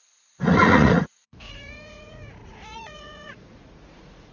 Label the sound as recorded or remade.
remade